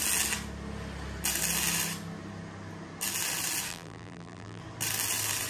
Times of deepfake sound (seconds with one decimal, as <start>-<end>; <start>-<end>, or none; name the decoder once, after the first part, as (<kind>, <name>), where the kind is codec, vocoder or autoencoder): 3.7-4.6 (vocoder, BigVGAN v2)